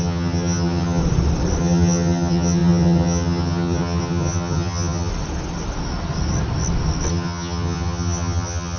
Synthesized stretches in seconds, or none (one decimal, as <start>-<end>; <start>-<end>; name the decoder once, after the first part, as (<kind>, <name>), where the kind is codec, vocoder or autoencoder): 0.0-1.0 (vocoder, HiFi-GAN); 1.6-5.1; 7.1-8.8